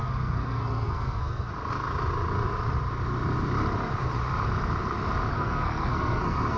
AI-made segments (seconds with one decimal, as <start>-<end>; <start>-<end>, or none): 0.0-1.5; 5.3-6.6